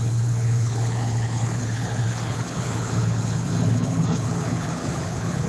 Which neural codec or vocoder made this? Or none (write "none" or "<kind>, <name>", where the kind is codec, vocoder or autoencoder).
codec, HILCodec